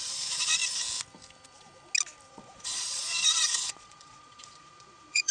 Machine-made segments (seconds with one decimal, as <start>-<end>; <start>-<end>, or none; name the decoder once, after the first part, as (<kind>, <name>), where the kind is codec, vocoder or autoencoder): 0.0-0.6 (vocoder, Vocos); 2.3-5.3